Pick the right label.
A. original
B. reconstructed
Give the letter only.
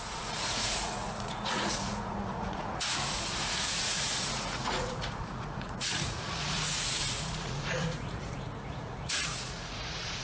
B